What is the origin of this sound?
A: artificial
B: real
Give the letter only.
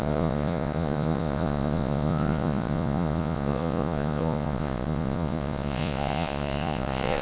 A